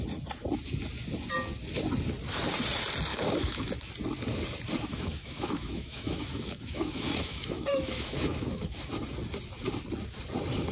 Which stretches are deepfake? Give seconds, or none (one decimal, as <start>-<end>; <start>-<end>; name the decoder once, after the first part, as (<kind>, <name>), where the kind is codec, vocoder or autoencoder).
3.1-3.7 (autoencoder, DAC-VAE); 4.9-8.9